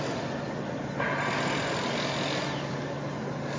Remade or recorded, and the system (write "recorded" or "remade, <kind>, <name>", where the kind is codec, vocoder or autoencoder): recorded